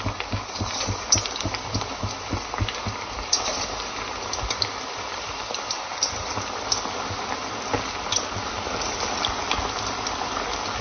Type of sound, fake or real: real